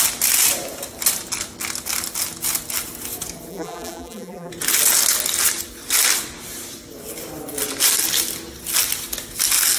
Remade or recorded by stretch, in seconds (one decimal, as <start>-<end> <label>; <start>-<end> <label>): 0.0-3.5 recorded; 3.5-4.5 remade; 4.5-9.8 recorded